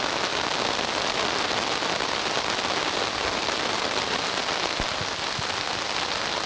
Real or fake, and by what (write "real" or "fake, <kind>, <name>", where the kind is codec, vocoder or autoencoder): real